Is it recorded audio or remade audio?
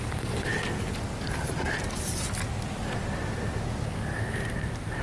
recorded